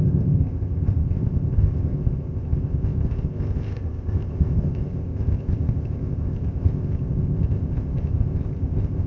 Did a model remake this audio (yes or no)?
yes